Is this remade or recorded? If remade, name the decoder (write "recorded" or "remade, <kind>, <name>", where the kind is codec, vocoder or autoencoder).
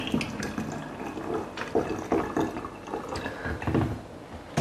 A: recorded